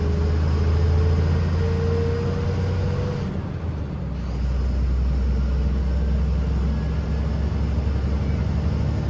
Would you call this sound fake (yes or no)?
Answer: no